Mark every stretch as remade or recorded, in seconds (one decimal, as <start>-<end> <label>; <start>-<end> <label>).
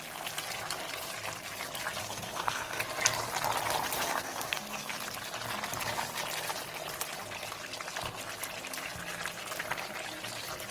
0.0-2.0 recorded; 2.0-2.8 remade; 2.8-4.0 recorded; 4.0-4.9 remade; 4.9-10.7 recorded